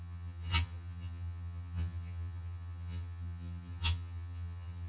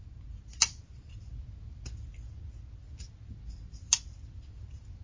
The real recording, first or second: second